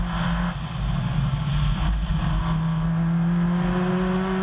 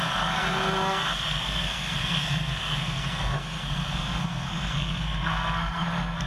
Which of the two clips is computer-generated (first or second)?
second